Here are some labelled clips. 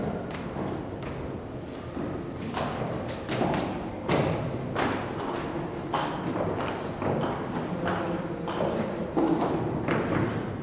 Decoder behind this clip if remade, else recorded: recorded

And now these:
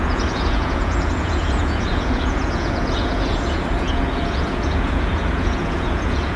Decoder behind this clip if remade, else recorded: remade, vocoder, Vocos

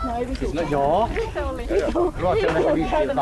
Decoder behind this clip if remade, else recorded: recorded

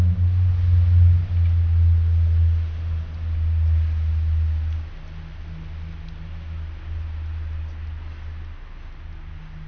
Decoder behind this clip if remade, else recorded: recorded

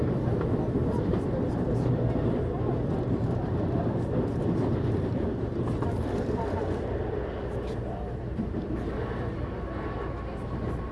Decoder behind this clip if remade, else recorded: recorded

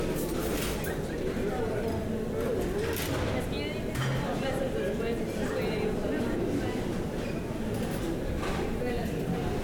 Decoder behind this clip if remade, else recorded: recorded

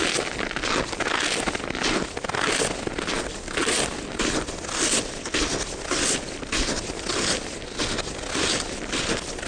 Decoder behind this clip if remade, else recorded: recorded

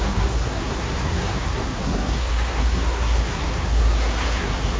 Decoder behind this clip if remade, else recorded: remade, codec, SNAC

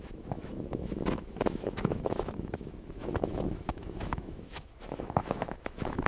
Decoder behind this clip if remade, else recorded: remade, autoencoder, DAC-VAE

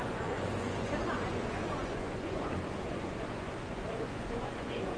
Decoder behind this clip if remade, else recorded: remade, vocoder, Vocos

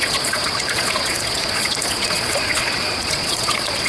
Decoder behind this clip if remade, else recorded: remade, vocoder, Vocos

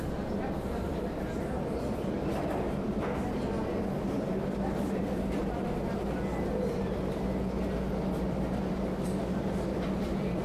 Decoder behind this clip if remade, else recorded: recorded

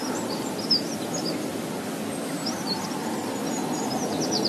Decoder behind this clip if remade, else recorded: recorded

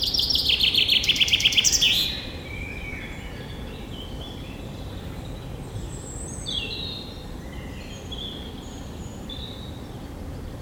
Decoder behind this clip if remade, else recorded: remade, vocoder, BigVGAN v2